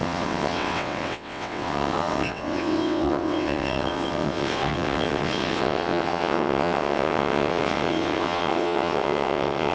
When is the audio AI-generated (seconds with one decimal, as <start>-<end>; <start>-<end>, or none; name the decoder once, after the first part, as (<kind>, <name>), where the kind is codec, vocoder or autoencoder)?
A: 0.0-9.7 (vocoder, WaveNeXt)